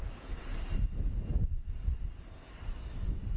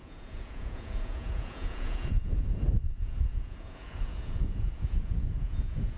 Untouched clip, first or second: first